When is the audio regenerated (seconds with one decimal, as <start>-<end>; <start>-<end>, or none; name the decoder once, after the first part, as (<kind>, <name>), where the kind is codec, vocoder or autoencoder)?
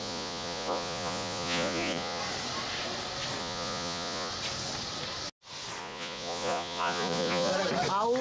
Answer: 0.0-2.2 (vocoder, Vocos); 3.4-4.3; 5.8-7.5